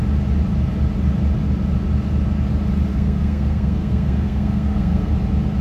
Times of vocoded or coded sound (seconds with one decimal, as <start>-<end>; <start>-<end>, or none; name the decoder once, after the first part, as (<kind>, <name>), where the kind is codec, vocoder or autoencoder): 2.9-5.1 (codec, SNAC)